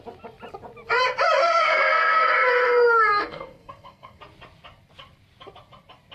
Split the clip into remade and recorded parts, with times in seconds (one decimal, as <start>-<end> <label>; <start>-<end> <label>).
0.0-1.4 recorded; 1.4-4.2 remade; 4.2-6.1 recorded